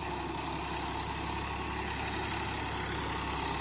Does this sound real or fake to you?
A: real